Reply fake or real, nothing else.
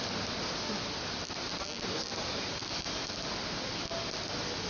real